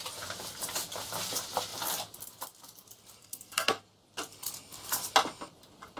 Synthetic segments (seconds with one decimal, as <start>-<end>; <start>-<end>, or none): 3.2-3.8